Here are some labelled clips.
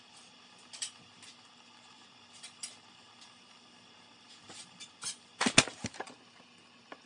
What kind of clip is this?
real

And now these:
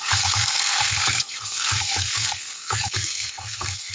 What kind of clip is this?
fake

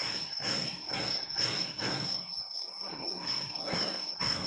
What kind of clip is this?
fake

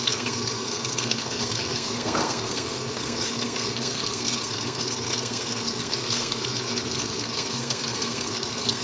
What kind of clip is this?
fake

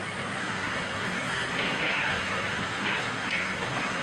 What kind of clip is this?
fake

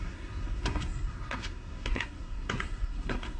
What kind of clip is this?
fake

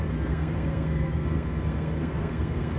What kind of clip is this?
fake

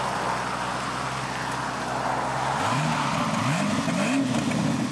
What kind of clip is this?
real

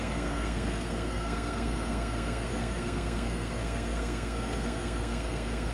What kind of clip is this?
fake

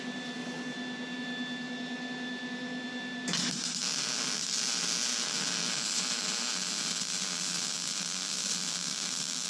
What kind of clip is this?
real